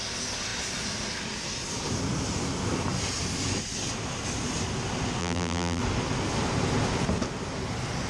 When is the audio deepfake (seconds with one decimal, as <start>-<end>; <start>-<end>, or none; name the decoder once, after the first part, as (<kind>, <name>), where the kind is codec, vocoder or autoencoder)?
5.2-5.8 (vocoder, BigVGAN v2)